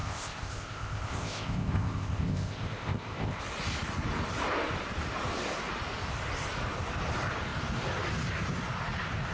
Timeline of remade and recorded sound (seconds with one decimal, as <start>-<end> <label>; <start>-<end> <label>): 0.0-3.4 remade; 3.4-9.3 recorded